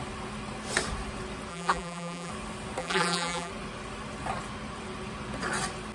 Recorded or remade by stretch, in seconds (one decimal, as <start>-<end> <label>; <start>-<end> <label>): 0.0-1.5 recorded; 1.5-2.3 remade; 2.3-2.8 recorded; 2.8-3.5 remade; 3.5-5.9 recorded